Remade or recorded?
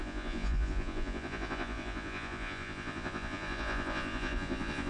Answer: remade